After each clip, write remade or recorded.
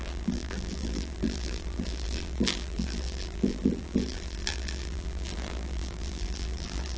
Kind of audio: remade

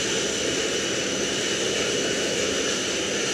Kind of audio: recorded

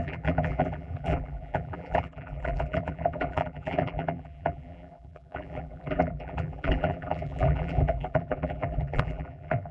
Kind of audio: remade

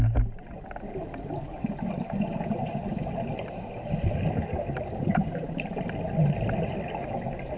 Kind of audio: recorded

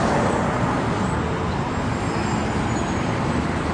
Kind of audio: recorded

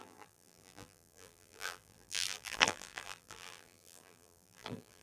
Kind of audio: remade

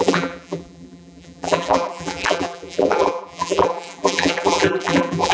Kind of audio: remade